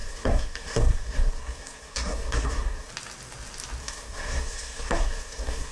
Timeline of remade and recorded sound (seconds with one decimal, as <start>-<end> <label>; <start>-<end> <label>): 0.0-2.9 remade; 2.9-3.8 recorded; 3.8-5.7 remade